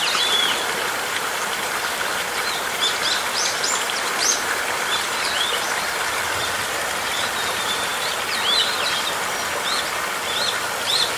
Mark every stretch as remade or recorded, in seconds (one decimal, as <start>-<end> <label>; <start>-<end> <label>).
0.0-7.9 remade; 7.9-11.2 recorded